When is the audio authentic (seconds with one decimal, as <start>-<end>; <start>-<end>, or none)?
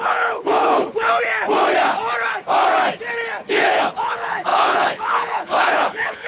1.1-3.5